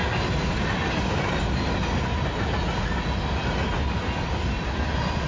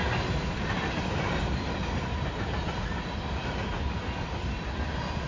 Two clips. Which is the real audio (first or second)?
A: first